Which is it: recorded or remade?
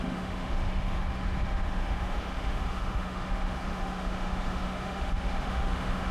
remade